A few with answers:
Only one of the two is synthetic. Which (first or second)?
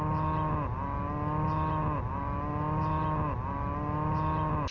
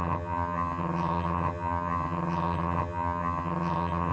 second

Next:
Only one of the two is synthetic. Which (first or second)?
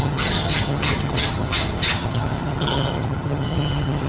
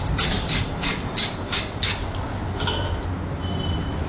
first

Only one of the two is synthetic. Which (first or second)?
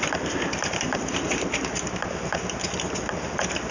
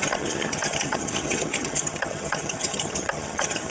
second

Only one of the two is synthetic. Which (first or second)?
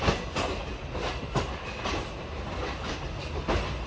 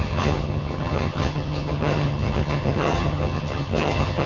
second